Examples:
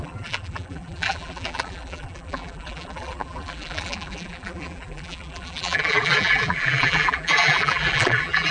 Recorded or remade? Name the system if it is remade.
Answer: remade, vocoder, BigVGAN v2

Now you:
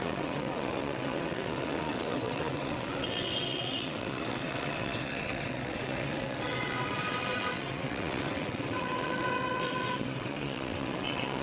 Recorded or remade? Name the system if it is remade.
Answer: remade, vocoder, WaveNeXt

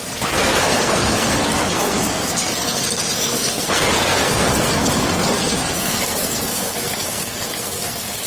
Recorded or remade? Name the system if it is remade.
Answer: remade, codec, SNAC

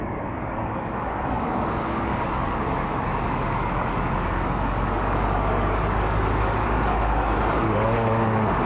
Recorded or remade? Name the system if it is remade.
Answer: remade, codec, DAC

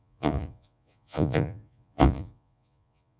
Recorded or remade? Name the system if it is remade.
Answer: remade, vocoder, Vocos